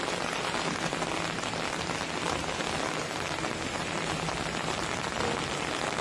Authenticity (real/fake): real